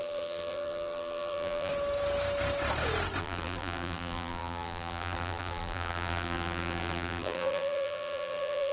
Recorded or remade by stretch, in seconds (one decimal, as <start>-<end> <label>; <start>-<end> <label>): 0.0-1.7 remade; 1.7-3.2 recorded; 3.2-8.7 remade